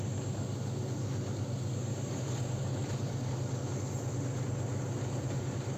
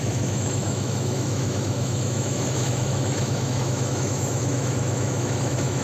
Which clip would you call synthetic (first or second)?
second